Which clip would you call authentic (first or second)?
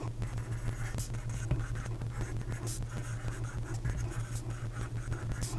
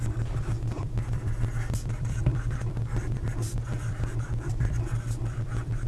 first